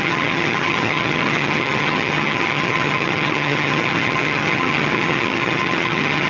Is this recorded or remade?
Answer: remade